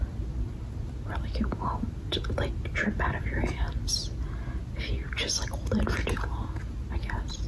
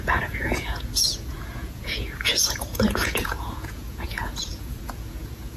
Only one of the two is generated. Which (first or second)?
second